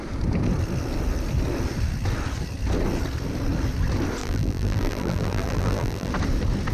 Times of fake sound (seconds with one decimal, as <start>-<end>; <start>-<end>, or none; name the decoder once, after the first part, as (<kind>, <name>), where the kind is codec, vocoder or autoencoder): 4.2-6.1 (vocoder, BigVGAN v2)